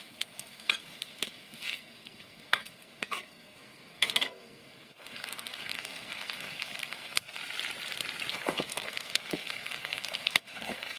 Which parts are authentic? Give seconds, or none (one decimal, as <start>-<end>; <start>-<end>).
7.4-8.3